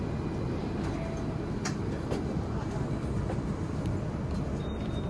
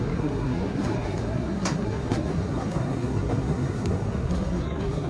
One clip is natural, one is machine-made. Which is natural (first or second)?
first